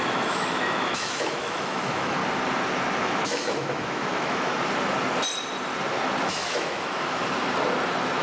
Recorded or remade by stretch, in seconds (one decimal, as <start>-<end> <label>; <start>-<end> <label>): 0.0-2.2 remade; 2.2-3.0 recorded; 3.0-4.5 remade; 4.5-6.2 recorded; 6.2-7.2 remade; 7.2-8.2 recorded